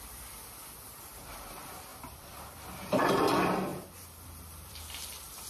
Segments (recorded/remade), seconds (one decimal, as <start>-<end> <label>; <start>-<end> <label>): 0.0-1.9 recorded; 1.9-2.7 remade; 2.7-3.7 recorded; 3.7-4.8 remade; 4.8-5.5 recorded